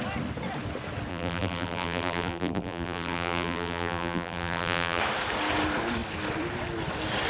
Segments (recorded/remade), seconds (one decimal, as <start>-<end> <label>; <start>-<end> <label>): 0.0-1.1 recorded; 1.1-5.0 remade; 5.0-7.3 recorded